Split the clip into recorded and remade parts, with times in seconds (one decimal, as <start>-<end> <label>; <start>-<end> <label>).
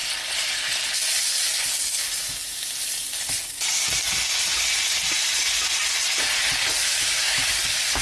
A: 0.0-6.8 recorded; 6.8-7.5 remade; 7.5-8.0 recorded